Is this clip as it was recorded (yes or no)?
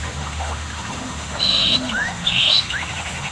no